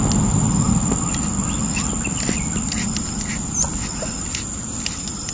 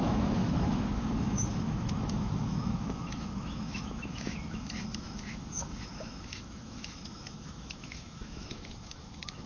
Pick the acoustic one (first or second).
first